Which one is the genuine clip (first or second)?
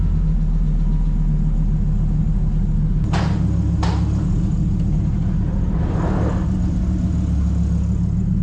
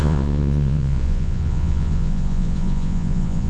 first